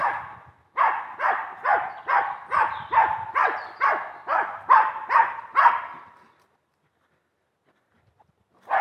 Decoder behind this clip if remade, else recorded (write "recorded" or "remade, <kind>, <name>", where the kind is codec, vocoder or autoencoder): recorded